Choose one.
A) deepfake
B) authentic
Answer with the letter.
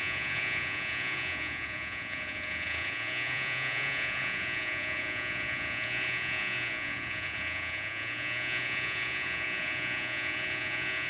A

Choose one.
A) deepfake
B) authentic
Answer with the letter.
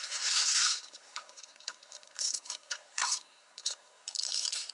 A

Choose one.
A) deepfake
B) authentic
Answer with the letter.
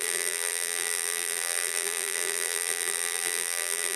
A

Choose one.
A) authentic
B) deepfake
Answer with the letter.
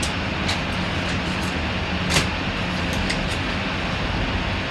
A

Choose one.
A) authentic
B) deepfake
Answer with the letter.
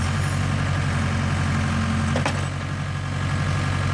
A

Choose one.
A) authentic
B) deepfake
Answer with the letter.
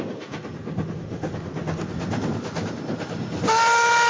A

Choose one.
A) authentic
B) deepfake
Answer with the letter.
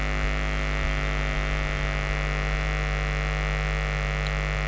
A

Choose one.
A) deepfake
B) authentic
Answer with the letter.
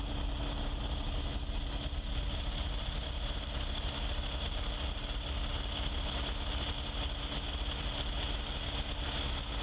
B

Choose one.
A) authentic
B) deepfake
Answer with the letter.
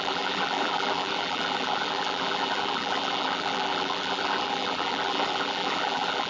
B